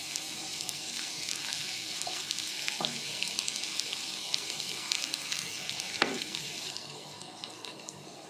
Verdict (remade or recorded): remade